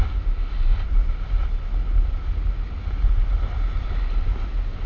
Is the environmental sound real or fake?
real